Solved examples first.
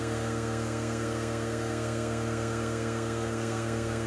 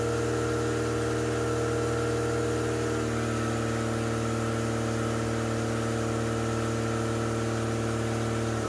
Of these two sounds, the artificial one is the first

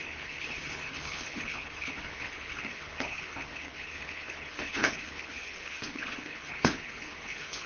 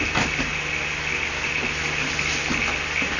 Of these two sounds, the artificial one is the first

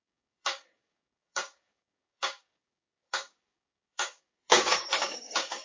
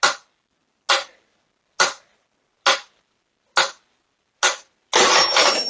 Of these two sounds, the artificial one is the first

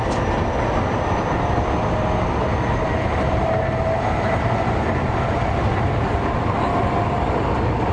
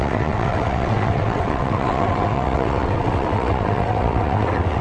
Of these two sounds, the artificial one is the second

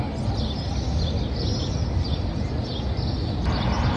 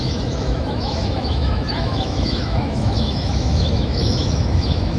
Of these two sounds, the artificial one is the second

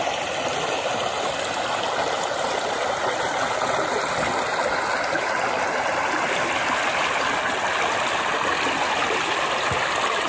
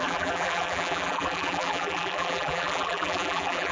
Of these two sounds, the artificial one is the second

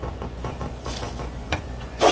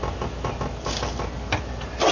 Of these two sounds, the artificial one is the first